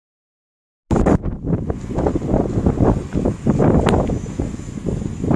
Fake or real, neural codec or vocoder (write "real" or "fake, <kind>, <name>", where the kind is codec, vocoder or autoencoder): real